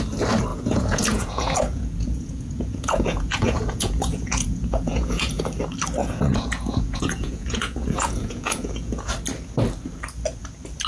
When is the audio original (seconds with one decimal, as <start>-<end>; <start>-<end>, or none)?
0.0-0.5; 5.4-6.0; 9.1-10.9